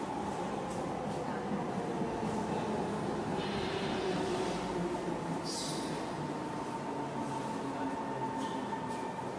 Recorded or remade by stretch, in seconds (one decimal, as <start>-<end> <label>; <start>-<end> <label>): 0.0-3.3 recorded; 3.3-5.7 remade; 5.7-9.4 recorded